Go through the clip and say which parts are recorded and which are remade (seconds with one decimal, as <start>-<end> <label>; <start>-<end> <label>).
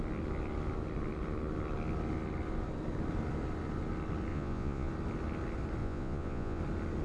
0.0-4.3 recorded; 4.3-4.9 remade; 4.9-5.8 recorded; 5.8-6.6 remade; 6.6-7.0 recorded